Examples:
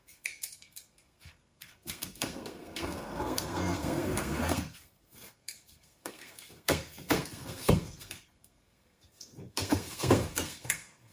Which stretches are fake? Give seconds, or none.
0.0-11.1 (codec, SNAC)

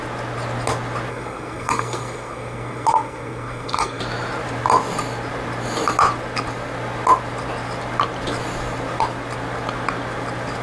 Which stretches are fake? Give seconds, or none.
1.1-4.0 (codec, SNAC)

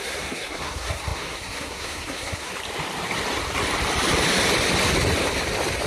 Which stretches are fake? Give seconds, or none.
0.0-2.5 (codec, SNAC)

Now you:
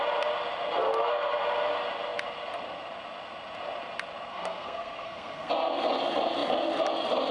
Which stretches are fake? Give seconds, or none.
4.3-5.5 (codec, SNAC)

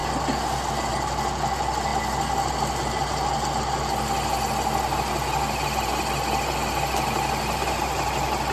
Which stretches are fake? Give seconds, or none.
none

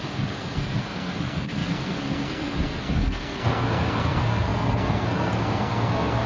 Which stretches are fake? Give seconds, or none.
0.0-6.3 (codec, SNAC)